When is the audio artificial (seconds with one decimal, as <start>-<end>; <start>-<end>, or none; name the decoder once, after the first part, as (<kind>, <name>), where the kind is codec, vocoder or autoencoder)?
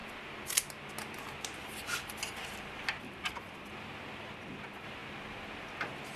none